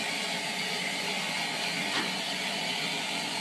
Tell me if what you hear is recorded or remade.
remade